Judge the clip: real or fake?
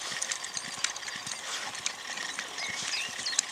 real